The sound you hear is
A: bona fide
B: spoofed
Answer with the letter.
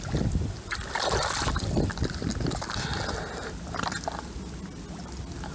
A